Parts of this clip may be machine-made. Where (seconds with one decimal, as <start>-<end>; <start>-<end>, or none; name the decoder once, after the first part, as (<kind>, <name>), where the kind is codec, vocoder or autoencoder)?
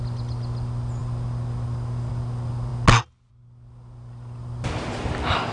none